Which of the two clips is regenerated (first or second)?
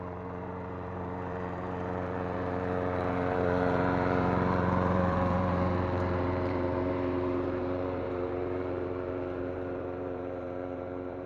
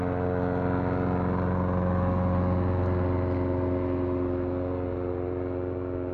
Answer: first